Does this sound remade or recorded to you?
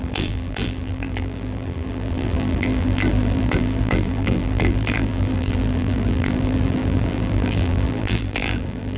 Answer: remade